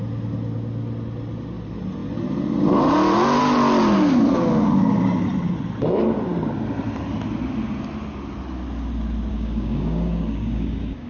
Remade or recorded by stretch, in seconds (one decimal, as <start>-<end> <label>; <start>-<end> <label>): 0.0-9.3 recorded; 9.3-11.1 remade